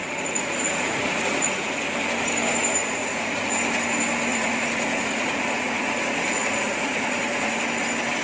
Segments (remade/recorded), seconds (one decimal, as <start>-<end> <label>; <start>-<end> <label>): 0.0-1.8 remade; 1.8-2.8 recorded; 2.8-3.5 remade; 3.5-4.3 recorded; 4.3-7.6 remade; 7.6-8.2 recorded